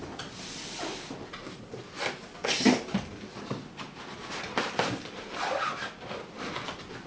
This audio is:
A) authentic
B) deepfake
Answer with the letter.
A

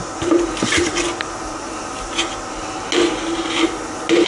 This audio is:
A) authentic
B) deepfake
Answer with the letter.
A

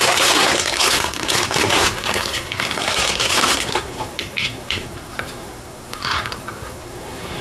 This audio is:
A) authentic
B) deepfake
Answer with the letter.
B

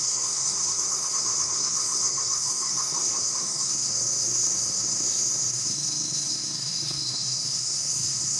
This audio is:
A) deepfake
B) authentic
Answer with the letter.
A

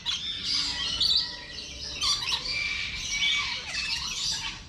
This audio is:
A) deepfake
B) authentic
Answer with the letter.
B